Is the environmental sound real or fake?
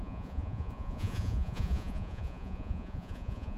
fake